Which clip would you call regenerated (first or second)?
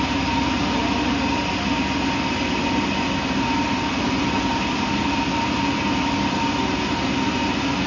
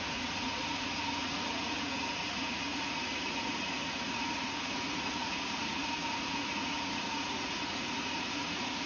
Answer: second